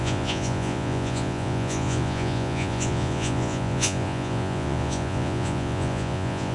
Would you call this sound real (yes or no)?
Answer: no